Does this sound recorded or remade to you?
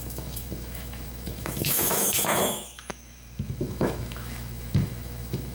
remade